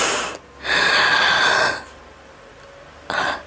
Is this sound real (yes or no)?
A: yes